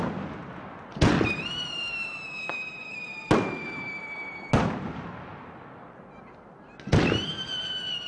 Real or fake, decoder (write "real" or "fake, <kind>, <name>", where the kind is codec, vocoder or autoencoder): real